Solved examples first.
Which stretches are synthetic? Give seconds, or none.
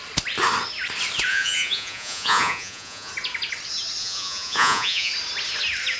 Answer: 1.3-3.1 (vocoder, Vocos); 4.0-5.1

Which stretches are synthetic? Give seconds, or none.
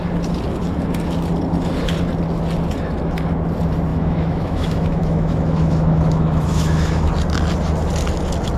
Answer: 3.9-7.1 (autoencoder, DAC-VAE)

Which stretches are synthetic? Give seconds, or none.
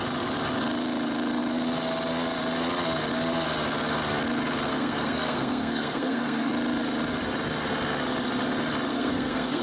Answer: 4.7-6.5 (codec, SNAC); 8.9-9.6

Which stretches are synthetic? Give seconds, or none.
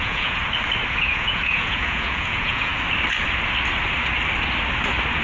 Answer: 0.0-0.4 (vocoder, Vocos); 0.9-2.7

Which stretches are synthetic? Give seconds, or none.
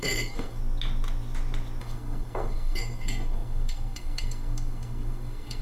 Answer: 0.0-0.6 (codec, SNAC); 1.8-5.6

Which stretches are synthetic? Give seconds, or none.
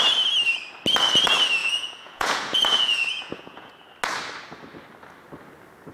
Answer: 1.6-3.7 (vocoder, Vocos)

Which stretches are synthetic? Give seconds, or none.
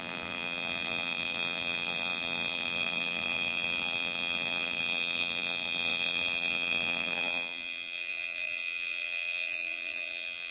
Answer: 0.0-10.5 (vocoder, BigVGAN v2)